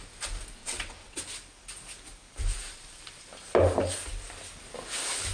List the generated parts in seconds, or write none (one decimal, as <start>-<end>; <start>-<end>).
0.6-1.2